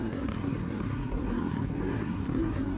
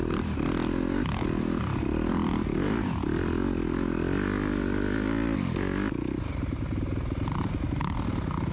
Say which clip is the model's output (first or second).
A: first